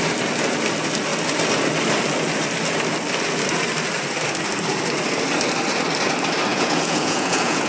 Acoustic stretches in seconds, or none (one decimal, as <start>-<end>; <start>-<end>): 0.0-6.5